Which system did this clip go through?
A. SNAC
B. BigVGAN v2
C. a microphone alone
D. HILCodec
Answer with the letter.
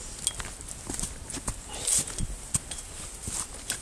C